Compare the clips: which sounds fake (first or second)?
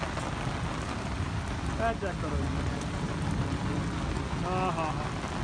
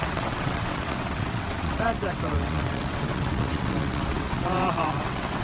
second